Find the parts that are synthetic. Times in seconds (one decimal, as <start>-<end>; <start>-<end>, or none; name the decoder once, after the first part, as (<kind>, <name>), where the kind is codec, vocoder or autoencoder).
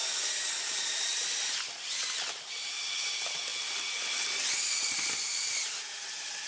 0.0-1.2 (vocoder, BigVGAN v2); 3.5-5.6